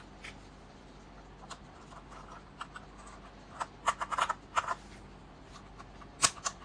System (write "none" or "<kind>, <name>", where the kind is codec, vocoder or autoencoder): none